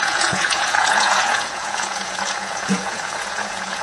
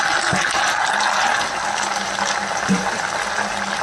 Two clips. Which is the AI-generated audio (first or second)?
first